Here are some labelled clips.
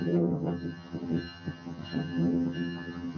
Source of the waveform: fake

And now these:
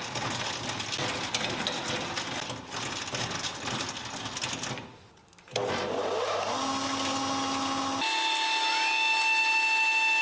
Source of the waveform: real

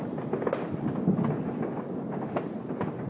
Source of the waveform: real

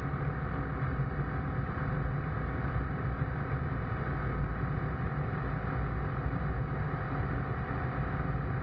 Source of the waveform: real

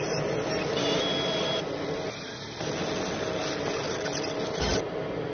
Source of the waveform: real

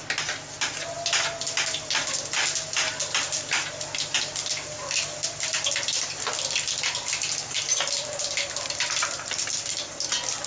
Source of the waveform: real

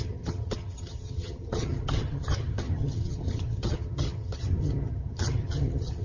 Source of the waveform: fake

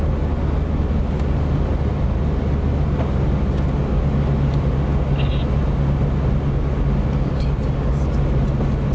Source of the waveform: real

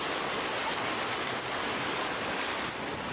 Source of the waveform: real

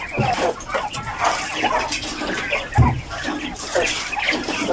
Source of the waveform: real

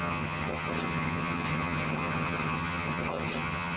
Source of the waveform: fake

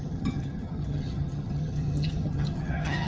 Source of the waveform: fake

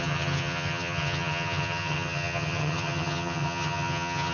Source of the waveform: fake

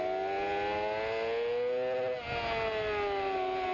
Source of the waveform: real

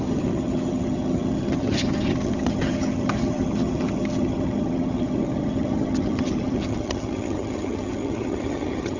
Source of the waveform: fake